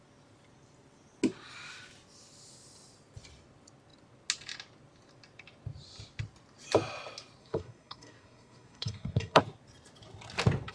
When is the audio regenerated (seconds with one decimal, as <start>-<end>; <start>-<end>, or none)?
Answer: 7.4-9.4